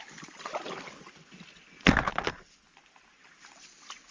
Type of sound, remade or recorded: recorded